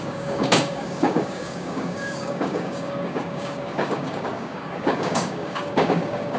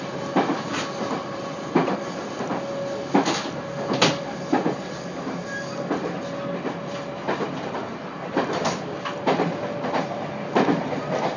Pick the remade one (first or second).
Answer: first